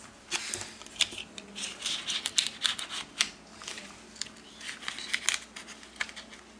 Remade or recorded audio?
recorded